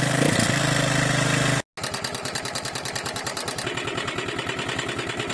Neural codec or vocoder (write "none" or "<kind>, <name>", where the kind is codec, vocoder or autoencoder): none